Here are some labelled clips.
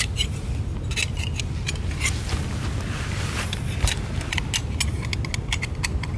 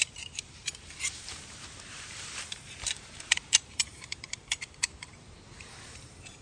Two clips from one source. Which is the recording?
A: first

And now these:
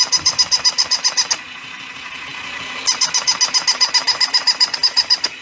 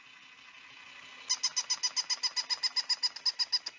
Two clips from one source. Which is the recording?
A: second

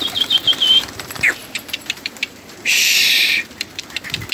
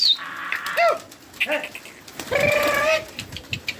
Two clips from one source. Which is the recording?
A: second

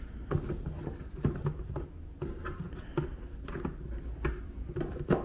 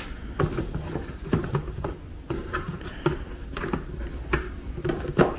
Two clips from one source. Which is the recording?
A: first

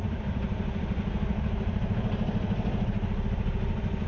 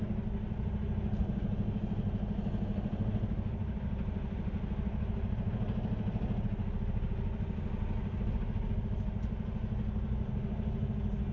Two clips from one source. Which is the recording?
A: second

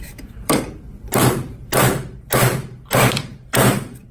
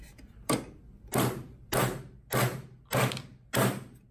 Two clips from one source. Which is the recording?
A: second